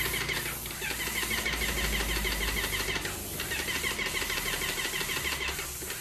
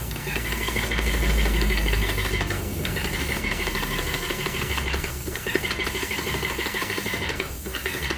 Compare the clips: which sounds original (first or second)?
first